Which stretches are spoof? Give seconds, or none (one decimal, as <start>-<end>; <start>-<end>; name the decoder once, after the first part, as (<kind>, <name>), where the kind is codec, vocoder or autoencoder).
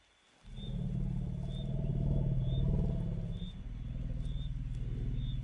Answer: 1.9-2.4 (autoencoder, DAC-VAE)